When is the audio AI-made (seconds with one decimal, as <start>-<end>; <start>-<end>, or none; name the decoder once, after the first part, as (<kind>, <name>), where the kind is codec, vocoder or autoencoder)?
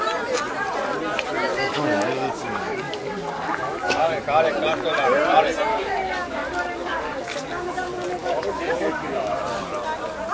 1.5-4.1 (codec, DAC); 5.7-7.7; 8.2-9.4